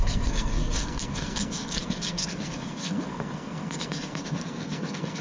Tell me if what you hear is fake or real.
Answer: fake